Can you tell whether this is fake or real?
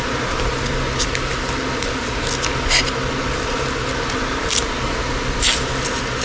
real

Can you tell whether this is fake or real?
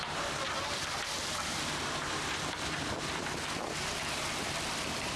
real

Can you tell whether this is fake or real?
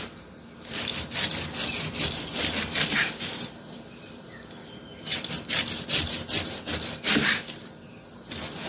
fake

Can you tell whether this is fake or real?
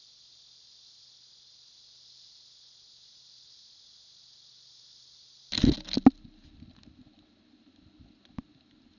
real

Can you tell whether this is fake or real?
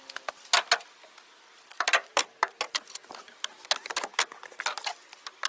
real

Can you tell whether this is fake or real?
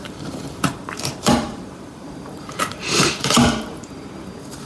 fake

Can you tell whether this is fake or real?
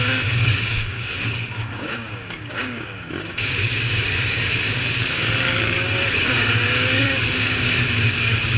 fake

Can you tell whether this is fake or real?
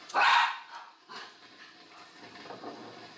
real